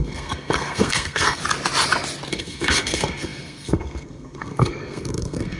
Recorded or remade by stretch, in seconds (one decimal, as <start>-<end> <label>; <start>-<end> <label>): 0.0-1.4 remade; 1.4-2.3 recorded; 2.3-5.6 remade